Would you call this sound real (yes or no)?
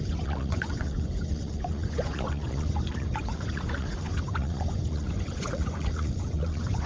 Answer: no